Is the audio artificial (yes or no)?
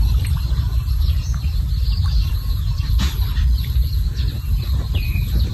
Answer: yes